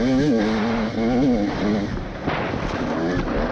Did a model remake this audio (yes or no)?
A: no